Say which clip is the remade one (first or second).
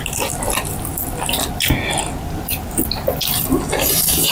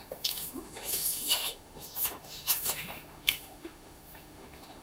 second